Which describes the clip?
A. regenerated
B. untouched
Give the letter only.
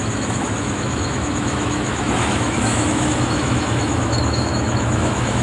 A